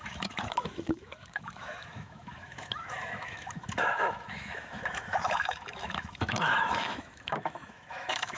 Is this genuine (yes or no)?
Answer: no